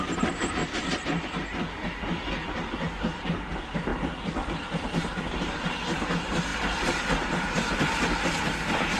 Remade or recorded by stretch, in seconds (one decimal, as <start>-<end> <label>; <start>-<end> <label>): 0.0-0.6 remade; 0.6-3.0 recorded; 3.0-9.0 remade